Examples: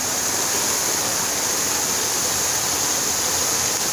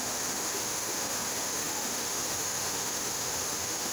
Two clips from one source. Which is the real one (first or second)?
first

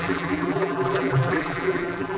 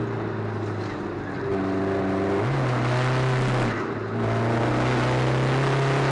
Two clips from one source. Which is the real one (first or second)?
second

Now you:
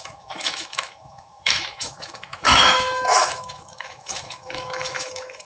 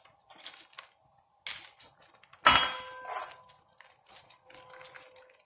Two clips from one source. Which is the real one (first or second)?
second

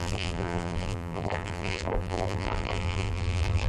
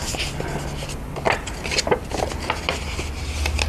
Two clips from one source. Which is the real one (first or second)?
second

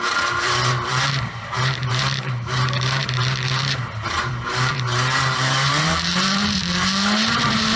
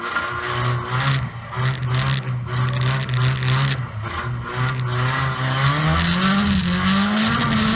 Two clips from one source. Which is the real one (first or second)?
second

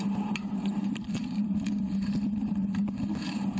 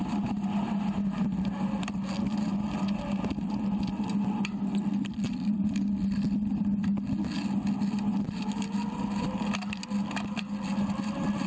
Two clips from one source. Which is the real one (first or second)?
second